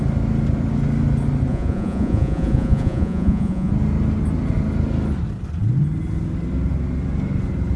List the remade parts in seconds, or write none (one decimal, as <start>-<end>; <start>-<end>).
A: 1.5-3.7